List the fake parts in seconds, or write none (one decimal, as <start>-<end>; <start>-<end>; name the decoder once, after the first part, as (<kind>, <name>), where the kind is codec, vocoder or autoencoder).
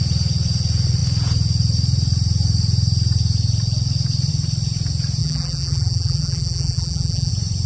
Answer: 5.2-7.3 (vocoder, BigVGAN v2)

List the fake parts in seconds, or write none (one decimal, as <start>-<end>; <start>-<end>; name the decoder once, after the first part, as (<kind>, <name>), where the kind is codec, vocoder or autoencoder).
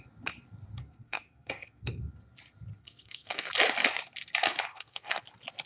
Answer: 0.8-2.0 (codec, SNAC); 2.8-3.5; 4.7-5.2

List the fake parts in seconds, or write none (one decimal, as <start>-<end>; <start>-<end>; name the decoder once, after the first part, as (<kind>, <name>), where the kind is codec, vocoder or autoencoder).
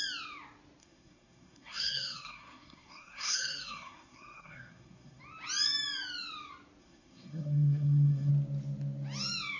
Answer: 0.8-5.2 (codec, SNAC); 6.8-8.3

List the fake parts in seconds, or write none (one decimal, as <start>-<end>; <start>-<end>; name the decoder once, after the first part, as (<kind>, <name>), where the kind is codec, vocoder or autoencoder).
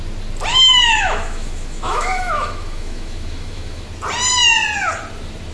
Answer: 0.5-3.8 (autoencoder, DAC-VAE)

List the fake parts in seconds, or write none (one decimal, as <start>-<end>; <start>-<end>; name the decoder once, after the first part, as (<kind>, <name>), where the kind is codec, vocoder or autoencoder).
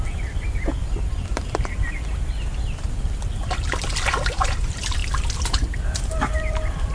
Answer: 0.0-5.0 (vocoder, BigVGAN v2); 5.8-6.9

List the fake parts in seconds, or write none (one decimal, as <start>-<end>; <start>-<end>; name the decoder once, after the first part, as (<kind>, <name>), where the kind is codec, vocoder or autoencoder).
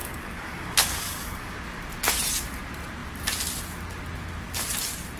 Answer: 0.0-1.6 (codec, DAC)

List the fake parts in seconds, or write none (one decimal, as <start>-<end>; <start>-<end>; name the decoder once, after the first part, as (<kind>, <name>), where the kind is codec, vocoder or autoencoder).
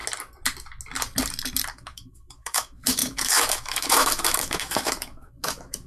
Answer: 1.7-5.9 (autoencoder, DAC-VAE)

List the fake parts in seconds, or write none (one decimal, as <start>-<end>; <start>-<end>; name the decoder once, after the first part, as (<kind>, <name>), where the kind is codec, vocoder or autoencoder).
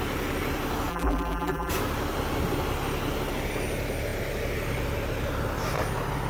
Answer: 0.9-1.7 (vocoder, BigVGAN v2)